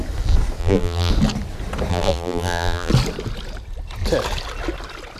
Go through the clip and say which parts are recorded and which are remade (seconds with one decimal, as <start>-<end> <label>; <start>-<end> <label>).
0.0-0.6 recorded; 0.6-1.1 remade; 1.1-1.9 recorded; 1.9-2.9 remade; 2.9-5.2 recorded